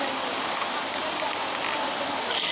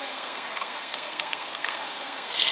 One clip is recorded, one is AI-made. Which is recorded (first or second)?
first